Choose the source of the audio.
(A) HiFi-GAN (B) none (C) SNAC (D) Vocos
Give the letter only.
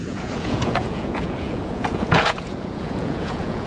D